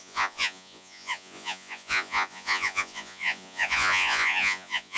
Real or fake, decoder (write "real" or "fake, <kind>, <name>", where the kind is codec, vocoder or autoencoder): fake, vocoder, Vocos